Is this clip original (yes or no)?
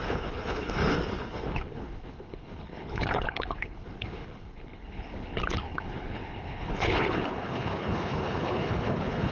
no